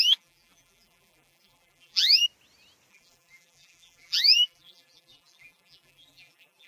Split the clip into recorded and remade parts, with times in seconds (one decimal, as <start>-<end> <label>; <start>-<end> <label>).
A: 0.0-2.2 remade; 2.2-2.9 recorded; 2.9-6.7 remade